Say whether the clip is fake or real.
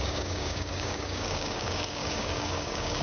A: fake